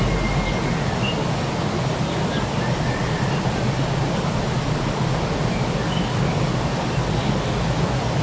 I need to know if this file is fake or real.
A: real